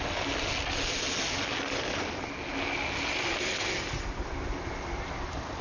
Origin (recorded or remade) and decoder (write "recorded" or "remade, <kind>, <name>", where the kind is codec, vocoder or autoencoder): recorded